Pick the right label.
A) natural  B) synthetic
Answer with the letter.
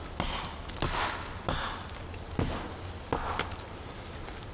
A